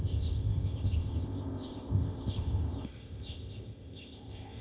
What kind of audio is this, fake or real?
fake